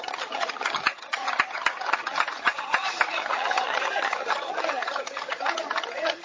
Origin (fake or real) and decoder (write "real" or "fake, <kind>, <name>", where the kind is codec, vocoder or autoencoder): fake, vocoder, HiFi-GAN